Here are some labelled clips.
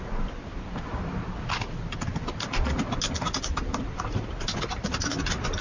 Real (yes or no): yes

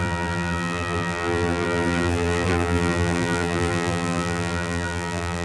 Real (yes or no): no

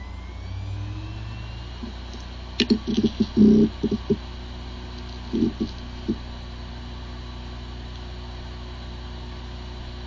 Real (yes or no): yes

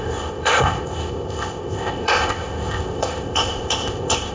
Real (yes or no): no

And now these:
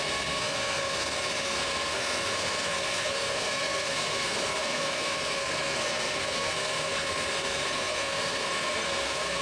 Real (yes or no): no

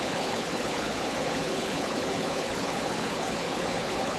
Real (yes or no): no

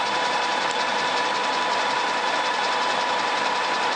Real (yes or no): no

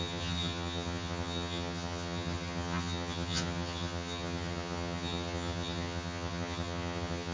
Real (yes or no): no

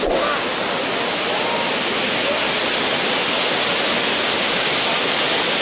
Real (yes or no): yes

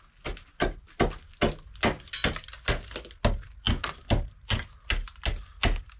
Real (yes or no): yes